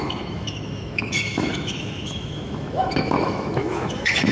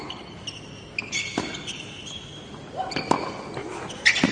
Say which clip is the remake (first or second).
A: first